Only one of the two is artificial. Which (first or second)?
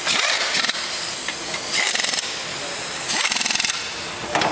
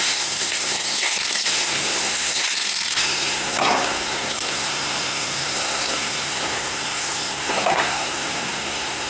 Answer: second